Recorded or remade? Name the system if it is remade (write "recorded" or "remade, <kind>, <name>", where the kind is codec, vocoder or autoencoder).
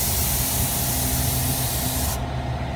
recorded